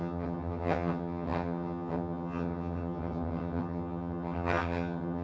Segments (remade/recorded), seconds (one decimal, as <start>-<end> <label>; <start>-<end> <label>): 0.0-5.2 remade